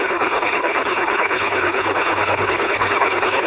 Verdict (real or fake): fake